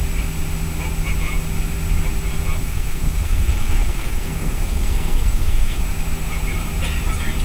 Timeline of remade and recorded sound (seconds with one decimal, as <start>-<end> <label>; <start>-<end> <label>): 0.0-2.6 recorded; 2.6-5.8 remade; 5.8-7.4 recorded